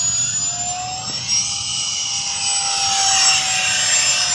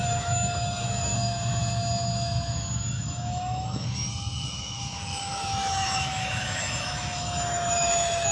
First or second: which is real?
first